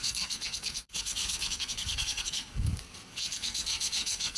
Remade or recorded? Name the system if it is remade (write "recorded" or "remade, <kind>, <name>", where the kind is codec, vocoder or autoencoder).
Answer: remade, codec, SNAC